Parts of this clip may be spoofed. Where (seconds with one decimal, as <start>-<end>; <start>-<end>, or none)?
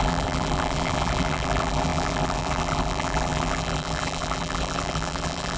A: 0.0-5.6